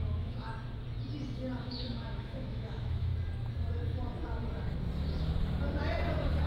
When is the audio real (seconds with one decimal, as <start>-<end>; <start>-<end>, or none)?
0.5-1.6; 3.1-6.5

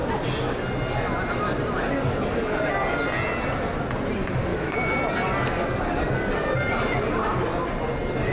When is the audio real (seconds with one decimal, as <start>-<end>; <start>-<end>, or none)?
0.0-4.5; 5.0-8.3